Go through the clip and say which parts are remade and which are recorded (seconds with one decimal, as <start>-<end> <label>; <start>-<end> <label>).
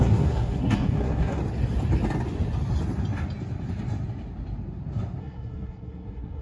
0.0-1.4 remade; 1.4-5.2 recorded; 5.2-6.4 remade